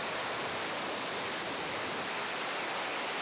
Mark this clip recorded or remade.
recorded